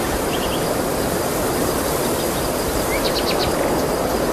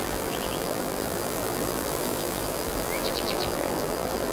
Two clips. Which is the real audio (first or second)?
first